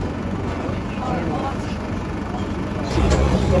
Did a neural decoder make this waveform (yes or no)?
yes